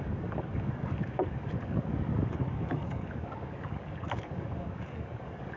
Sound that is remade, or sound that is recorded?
remade